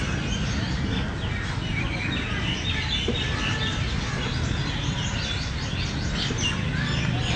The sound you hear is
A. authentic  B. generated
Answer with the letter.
A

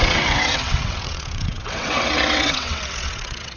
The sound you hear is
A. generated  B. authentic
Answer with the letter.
A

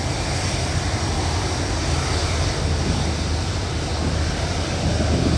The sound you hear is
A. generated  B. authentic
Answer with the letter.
B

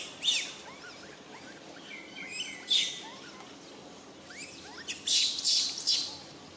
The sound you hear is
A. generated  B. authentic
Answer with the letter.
B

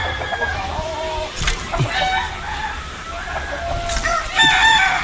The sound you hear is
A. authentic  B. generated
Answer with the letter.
A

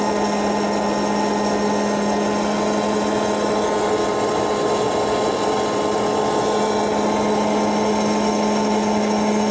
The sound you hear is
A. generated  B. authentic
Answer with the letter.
B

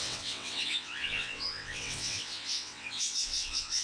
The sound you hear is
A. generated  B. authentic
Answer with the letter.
A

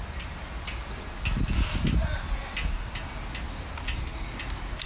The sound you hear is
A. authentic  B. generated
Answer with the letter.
A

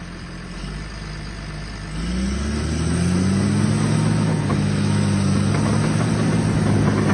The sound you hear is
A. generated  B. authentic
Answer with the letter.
B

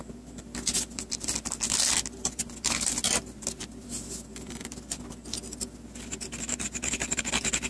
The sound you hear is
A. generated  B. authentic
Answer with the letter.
B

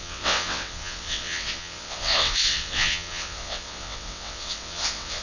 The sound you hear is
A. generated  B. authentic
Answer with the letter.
A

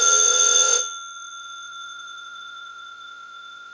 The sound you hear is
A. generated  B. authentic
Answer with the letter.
A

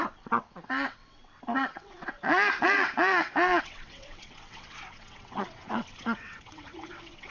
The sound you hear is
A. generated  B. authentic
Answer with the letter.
A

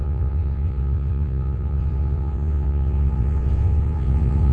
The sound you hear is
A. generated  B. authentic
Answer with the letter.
A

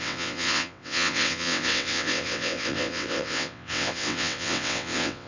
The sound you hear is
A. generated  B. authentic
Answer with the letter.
A